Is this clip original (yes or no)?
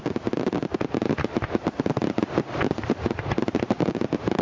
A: no